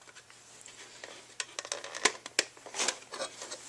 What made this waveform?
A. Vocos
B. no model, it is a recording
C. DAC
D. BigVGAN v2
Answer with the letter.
B